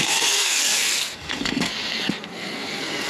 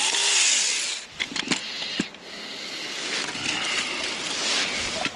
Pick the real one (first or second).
second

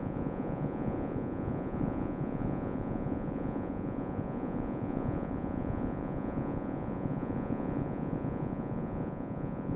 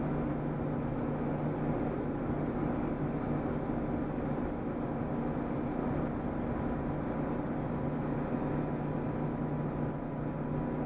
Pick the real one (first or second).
second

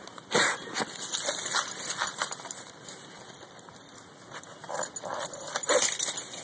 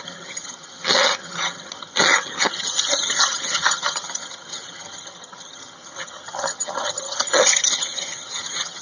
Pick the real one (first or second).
first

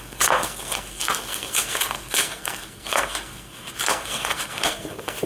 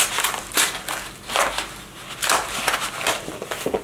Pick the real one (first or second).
second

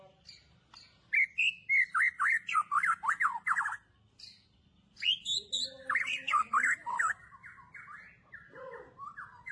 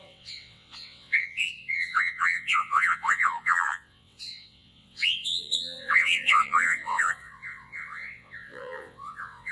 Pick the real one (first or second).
first